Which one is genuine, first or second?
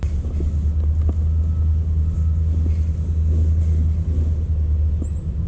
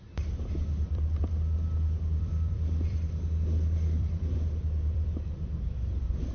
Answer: first